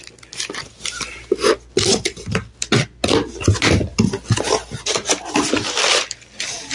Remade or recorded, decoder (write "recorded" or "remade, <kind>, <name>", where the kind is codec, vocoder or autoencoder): recorded